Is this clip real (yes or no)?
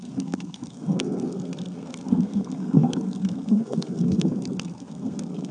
no